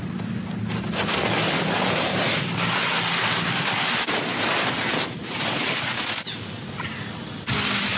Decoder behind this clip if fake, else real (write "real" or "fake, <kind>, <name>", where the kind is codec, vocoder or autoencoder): real